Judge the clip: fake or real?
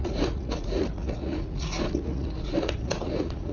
fake